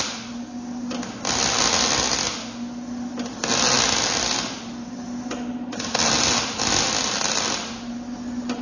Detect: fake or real real